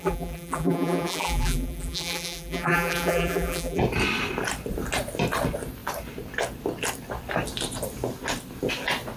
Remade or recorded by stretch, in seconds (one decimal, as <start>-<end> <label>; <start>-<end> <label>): 0.0-3.8 remade; 3.8-9.2 recorded